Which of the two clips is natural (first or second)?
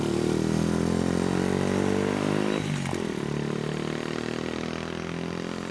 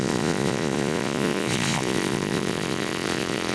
first